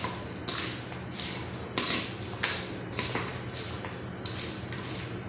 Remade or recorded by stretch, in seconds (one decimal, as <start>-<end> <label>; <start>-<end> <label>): 0.0-5.3 recorded